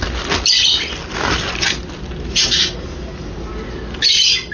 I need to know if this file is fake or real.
real